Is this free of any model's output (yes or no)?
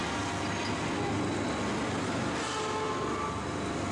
yes